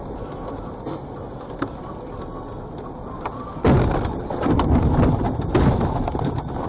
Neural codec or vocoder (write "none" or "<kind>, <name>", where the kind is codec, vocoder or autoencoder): none